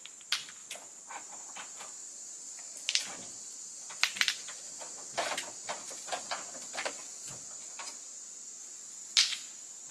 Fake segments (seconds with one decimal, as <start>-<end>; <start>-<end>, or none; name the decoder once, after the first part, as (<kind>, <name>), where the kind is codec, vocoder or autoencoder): none